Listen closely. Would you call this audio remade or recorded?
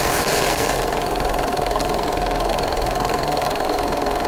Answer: remade